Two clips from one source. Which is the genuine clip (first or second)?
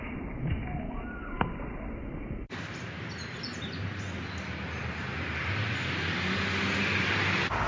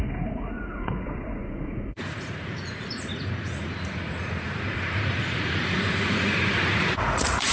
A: first